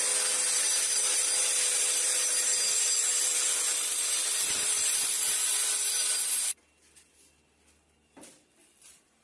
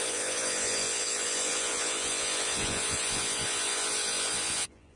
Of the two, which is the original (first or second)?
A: first